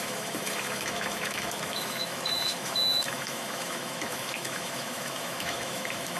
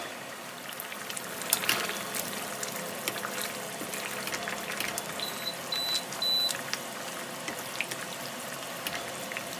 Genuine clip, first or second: second